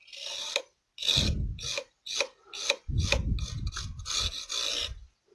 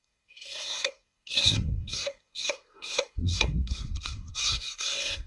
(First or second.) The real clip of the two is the first